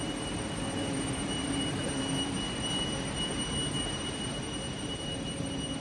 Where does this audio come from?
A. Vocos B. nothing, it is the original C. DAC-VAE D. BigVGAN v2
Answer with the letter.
D